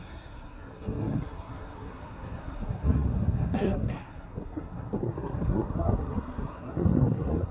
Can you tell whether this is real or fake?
fake